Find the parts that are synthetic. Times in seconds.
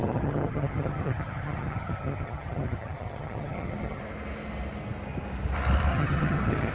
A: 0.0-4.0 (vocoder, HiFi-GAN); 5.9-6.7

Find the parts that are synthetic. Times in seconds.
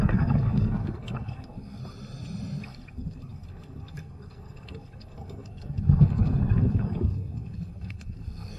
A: 0.0-1.8 (codec, SNAC); 2.6-8.6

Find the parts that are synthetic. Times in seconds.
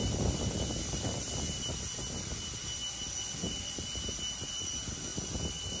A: none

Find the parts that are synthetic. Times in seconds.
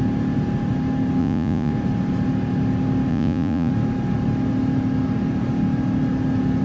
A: 1.2-1.7 (vocoder, Vocos); 3.1-3.7